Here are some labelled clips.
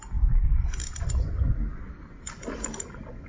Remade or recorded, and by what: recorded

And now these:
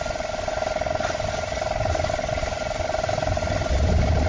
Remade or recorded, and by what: recorded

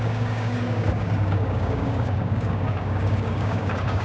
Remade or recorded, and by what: remade, codec, DAC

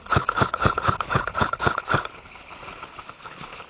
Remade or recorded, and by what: remade, codec, HILCodec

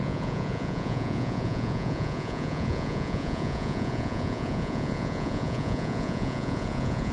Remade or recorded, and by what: remade, vocoder, Vocos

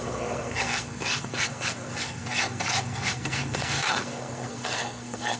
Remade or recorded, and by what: remade, codec, SNAC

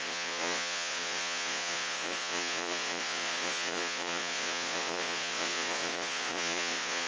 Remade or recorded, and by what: remade, vocoder, Vocos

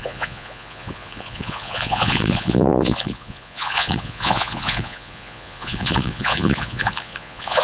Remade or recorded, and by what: remade, vocoder, Vocos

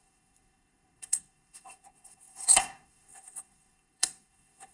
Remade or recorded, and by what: remade, codec, SNAC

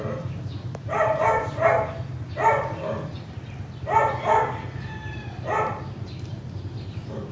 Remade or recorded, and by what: recorded